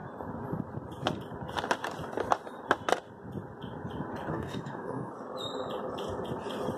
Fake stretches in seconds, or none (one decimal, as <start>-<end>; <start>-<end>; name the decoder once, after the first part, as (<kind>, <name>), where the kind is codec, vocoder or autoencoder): 4.3-5.1 (codec, DAC)